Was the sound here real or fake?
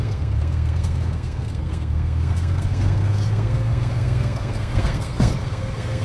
fake